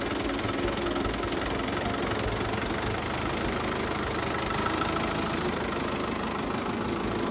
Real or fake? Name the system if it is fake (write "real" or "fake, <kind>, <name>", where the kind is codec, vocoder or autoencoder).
real